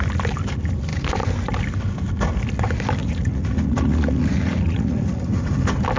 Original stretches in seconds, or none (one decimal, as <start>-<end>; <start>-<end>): 0.0-3.0; 5.6-6.0